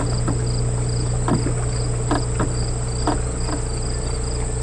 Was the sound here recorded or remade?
recorded